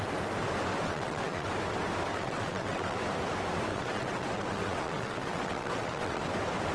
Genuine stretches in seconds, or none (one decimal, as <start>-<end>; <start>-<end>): 0.0-0.9; 1.5-2.1; 3.0-3.7; 6.2-6.7